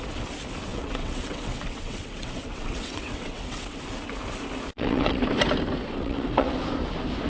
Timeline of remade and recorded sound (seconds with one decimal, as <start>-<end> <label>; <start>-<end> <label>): 0.0-0.7 recorded; 0.7-3.8 remade; 3.8-4.7 recorded; 4.7-5.2 remade; 5.2-6.0 recorded; 6.0-6.6 remade; 6.6-7.3 recorded